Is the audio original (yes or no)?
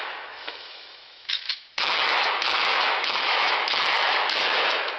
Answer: no